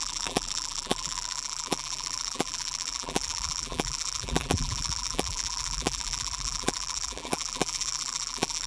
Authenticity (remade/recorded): remade